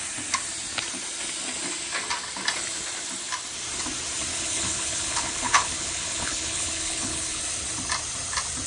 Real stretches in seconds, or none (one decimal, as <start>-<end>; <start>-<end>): 0.0-4.3; 7.4-8.7